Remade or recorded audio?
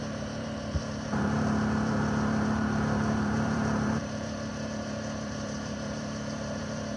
remade